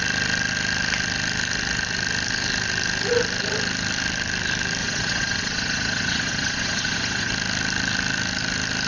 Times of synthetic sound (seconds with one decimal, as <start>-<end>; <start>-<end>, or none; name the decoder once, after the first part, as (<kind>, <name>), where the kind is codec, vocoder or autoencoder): 4.8-7.3 (vocoder, Vocos)